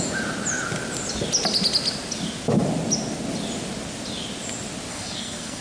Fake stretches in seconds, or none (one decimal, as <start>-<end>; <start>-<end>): 4.9-5.6